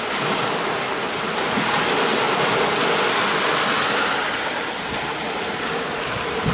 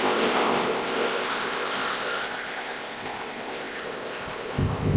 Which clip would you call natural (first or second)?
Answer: first